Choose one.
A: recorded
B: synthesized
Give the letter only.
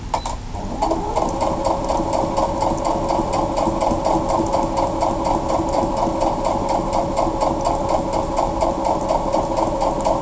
A